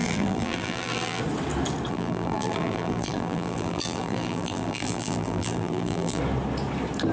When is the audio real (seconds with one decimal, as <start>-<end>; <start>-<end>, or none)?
1.2-1.9; 6.2-7.1